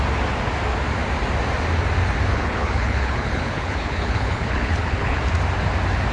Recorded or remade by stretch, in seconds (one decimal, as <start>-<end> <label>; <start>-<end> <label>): 0.0-2.3 recorded; 2.3-5.2 remade; 5.2-6.1 recorded